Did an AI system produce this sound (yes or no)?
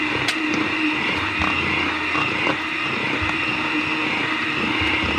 no